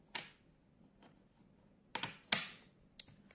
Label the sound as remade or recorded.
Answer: recorded